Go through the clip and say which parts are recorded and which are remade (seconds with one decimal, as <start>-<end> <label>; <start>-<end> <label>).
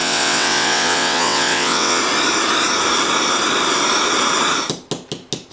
0.0-2.0 remade; 2.0-5.5 recorded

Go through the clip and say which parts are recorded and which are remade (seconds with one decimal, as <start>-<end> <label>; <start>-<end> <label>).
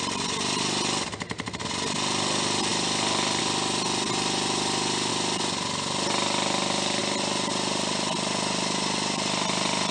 0.0-9.9 recorded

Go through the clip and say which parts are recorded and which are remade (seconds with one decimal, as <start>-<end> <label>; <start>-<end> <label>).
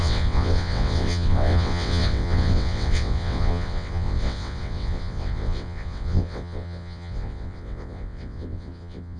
0.0-9.2 remade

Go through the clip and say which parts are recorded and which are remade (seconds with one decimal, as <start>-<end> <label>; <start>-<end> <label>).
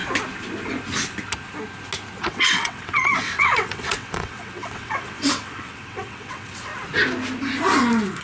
0.0-2.2 recorded; 2.2-6.7 remade; 6.7-8.2 recorded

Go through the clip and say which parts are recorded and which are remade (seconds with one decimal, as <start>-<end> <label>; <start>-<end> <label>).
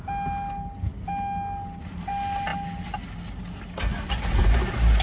0.0-5.0 recorded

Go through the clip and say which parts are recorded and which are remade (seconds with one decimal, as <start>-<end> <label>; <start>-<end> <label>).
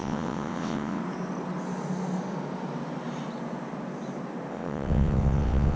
0.0-1.0 remade; 1.0-4.5 recorded; 4.5-5.8 remade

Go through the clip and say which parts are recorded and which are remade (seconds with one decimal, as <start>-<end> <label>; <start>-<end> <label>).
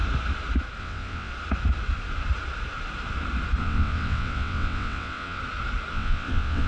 0.0-0.8 recorded; 0.8-1.3 remade; 1.3-3.6 recorded; 3.6-5.4 remade; 5.4-5.9 recorded; 5.9-6.7 remade